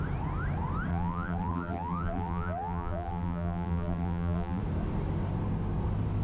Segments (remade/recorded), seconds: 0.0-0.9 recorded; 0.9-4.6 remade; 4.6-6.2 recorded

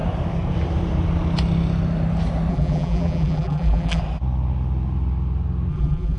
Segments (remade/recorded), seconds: 0.0-2.5 recorded; 2.5-4.0 remade; 4.0-5.7 recorded; 5.7-6.2 remade